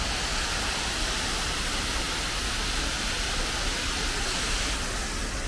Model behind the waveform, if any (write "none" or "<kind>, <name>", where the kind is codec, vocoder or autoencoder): none